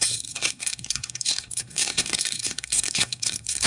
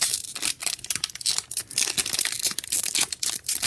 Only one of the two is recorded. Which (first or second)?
second